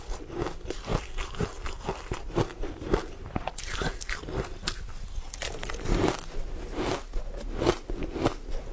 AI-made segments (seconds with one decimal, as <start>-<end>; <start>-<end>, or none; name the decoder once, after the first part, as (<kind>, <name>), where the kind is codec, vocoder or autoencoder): none